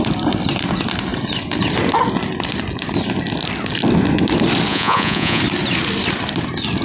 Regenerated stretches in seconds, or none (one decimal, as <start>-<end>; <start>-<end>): 4.7-5.4